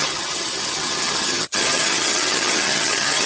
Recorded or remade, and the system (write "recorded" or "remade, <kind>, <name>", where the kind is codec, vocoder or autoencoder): remade, vocoder, HiFi-GAN